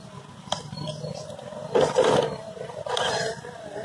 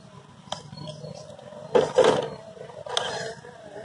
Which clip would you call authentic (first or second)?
second